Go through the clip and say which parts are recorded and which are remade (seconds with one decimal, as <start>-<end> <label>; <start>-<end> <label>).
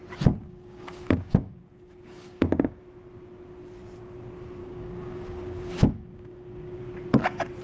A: 0.0-0.4 recorded; 0.4-2.8 remade; 2.8-4.6 recorded; 4.6-6.8 remade; 6.8-7.6 recorded